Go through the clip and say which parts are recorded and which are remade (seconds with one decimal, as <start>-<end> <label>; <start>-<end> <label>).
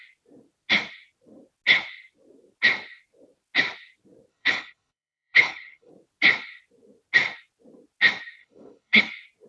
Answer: 0.0-4.3 recorded; 4.3-5.9 remade; 5.9-8.4 recorded; 8.4-9.0 remade; 9.0-9.5 recorded